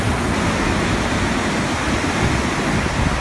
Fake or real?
real